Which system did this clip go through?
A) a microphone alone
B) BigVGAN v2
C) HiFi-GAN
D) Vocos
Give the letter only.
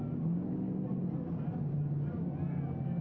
A